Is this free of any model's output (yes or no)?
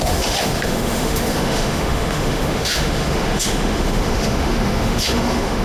no